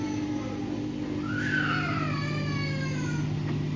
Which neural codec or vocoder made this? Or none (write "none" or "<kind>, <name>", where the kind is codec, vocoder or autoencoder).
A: none